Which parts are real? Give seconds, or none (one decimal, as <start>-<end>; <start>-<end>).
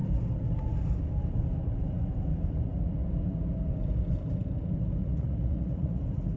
0.0-5.0; 6.0-6.4